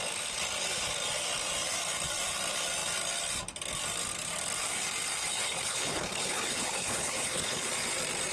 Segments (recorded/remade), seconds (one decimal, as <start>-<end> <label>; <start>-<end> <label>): 0.0-5.3 recorded; 5.3-7.7 remade; 7.7-8.3 recorded